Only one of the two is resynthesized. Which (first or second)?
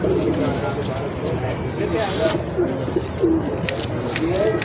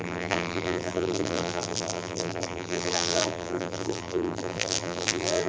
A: second